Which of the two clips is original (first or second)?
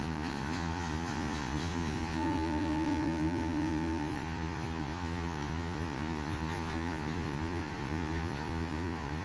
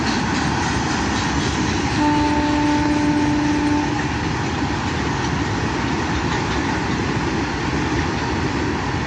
second